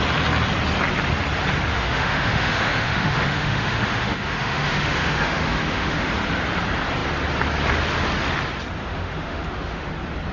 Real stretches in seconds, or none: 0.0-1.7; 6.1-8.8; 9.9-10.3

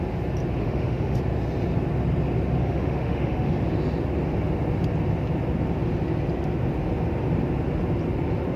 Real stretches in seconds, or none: 0.0-0.6; 1.2-2.6; 3.6-8.6

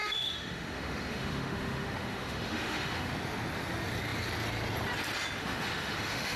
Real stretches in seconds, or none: 3.1-5.4